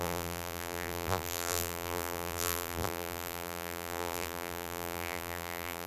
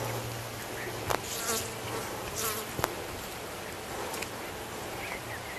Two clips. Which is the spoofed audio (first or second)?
first